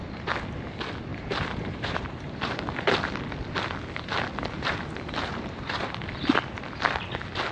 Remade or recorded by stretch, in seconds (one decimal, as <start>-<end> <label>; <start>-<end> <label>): 0.0-1.1 recorded; 1.1-2.6 remade; 2.6-5.3 recorded; 5.3-6.0 remade; 6.0-7.5 recorded